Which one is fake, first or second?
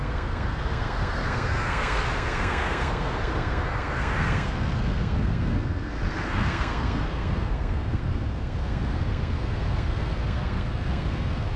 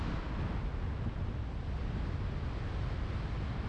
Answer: first